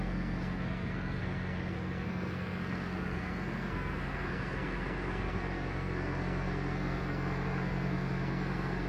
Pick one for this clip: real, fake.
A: fake